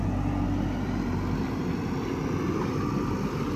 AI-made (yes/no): no